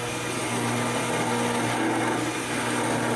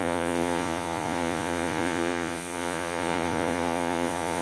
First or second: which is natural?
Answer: first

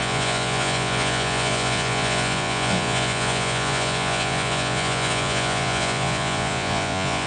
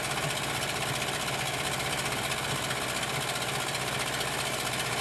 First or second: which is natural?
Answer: second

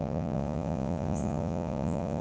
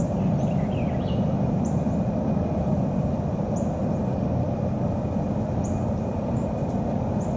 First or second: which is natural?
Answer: second